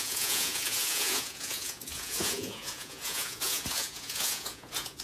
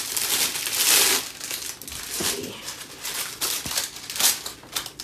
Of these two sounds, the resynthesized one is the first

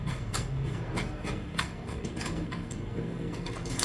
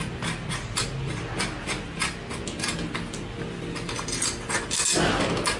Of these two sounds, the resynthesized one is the first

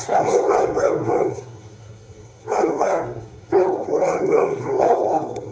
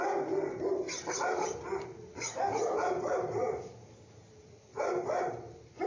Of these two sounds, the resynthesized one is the first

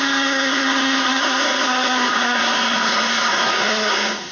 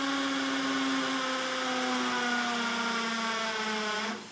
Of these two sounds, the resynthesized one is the first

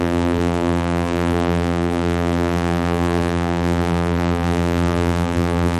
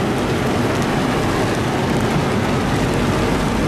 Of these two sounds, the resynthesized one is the first